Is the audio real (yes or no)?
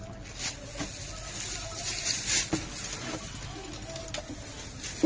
yes